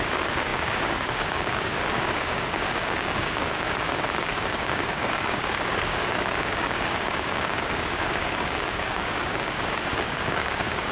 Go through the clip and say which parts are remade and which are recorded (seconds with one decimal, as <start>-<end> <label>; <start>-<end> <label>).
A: 0.0-10.9 remade